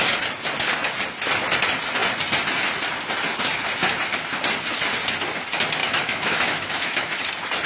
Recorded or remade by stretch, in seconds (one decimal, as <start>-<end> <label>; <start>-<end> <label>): 0.0-5.8 recorded; 5.8-7.3 remade; 7.3-7.7 recorded